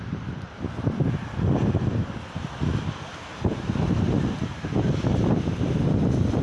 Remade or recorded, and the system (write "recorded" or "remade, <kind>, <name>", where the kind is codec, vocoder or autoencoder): recorded